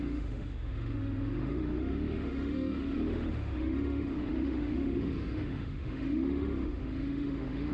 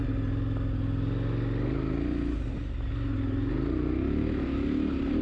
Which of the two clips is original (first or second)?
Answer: second